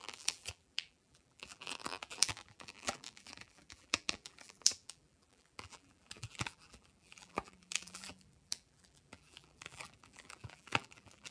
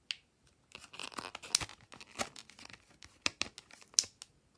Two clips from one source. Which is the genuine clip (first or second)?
second